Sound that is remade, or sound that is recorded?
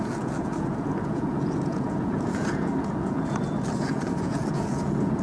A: remade